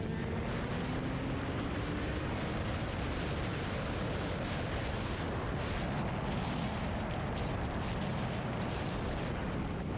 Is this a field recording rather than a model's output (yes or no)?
yes